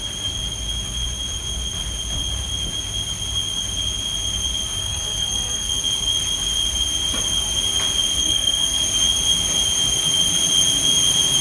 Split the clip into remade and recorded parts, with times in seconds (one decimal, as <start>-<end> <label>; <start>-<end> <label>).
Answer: 0.0-4.8 recorded; 4.8-5.8 remade; 5.8-8.2 recorded; 8.2-8.8 remade; 8.8-11.4 recorded